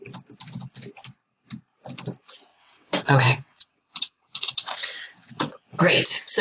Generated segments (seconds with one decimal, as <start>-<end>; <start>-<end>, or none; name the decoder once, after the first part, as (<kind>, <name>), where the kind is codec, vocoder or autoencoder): 2.5-5.8 (vocoder, WaveNeXt)